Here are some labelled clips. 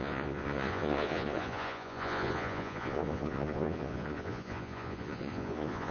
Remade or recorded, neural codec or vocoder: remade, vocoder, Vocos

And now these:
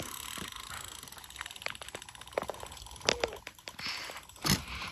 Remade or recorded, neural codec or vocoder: recorded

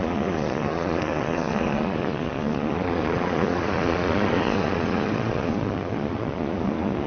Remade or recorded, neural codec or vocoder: remade, vocoder, Vocos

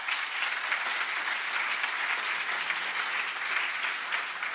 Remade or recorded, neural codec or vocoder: recorded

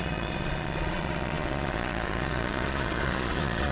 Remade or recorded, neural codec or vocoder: remade, vocoder, Vocos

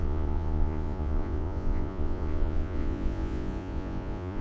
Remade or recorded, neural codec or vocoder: remade, vocoder, Vocos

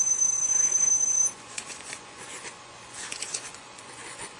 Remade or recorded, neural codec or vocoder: remade, vocoder, Vocos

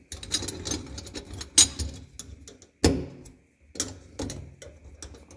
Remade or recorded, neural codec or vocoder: recorded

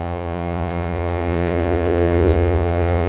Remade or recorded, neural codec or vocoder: remade, vocoder, Vocos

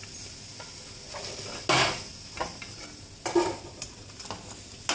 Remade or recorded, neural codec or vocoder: recorded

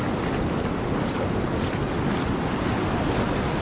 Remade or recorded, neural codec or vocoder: recorded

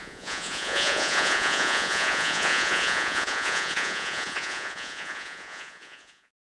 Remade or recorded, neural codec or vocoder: remade, vocoder, Vocos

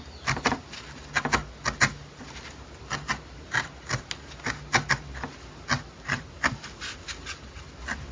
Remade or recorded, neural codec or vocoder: recorded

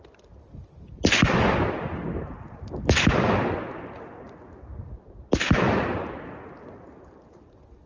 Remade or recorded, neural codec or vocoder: recorded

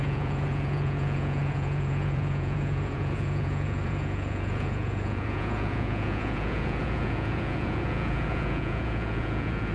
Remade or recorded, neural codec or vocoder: remade, vocoder, Vocos